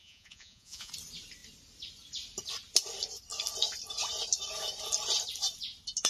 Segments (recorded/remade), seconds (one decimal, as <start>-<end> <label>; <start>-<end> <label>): 0.0-0.9 remade; 0.9-6.1 recorded